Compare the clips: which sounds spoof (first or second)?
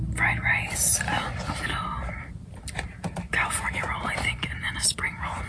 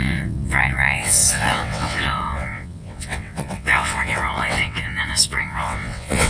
second